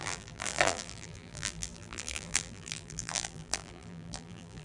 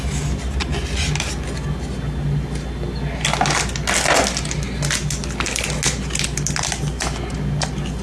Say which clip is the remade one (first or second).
first